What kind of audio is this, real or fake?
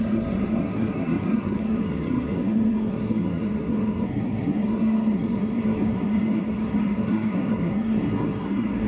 fake